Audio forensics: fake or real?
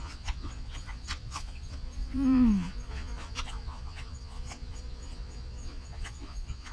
fake